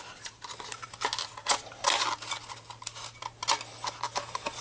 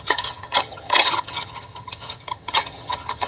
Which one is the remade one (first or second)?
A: second